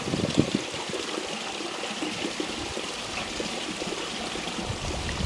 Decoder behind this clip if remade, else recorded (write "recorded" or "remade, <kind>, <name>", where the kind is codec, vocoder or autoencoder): recorded